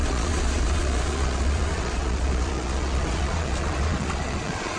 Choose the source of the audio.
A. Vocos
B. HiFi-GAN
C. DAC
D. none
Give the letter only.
A